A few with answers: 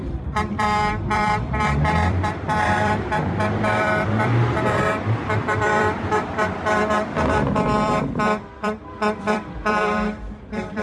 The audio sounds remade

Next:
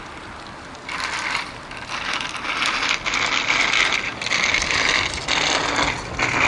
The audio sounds recorded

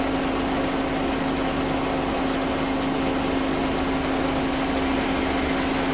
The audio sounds recorded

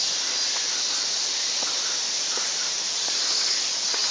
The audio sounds recorded